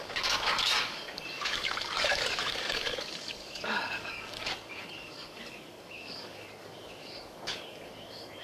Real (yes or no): no